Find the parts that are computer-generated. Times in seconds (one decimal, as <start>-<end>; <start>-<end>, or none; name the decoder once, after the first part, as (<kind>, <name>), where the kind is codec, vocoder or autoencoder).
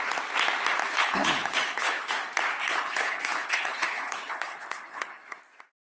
0.8-2.1 (codec, HILCodec); 2.6-5.4